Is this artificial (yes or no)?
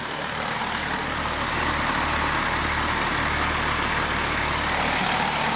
no